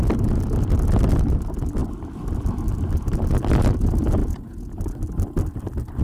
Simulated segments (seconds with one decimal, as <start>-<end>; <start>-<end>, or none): 4.2-4.8